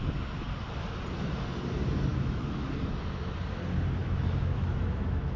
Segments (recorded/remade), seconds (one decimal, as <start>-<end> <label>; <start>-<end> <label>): 0.0-2.1 recorded; 2.1-2.7 remade; 2.7-4.0 recorded; 4.0-5.4 remade